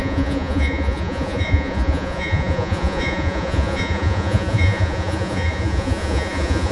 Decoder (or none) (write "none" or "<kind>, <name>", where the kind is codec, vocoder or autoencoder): vocoder, Vocos